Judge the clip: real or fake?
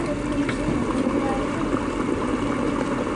real